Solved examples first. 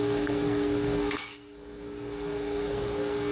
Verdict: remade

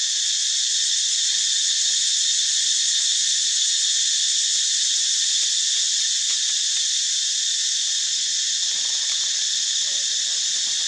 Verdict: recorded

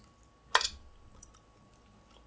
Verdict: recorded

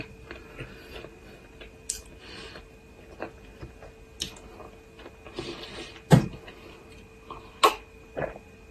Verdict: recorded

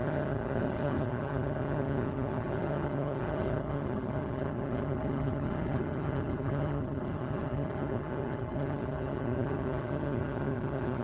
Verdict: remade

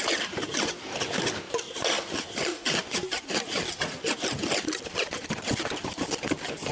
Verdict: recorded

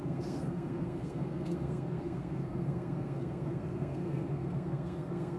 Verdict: remade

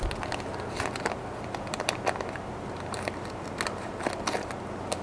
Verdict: recorded